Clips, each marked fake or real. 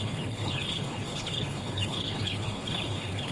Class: fake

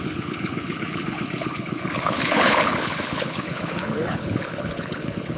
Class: fake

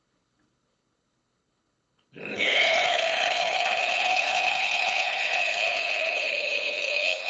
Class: fake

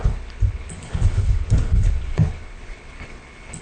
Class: fake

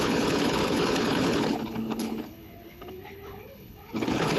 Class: fake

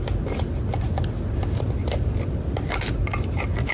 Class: real